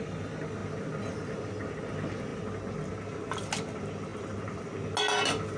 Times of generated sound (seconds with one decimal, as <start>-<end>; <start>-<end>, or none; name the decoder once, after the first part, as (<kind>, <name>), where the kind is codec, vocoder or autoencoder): none